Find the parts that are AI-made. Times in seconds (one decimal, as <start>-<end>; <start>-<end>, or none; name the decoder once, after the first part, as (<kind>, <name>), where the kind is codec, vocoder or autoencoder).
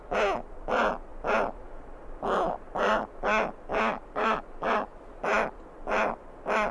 none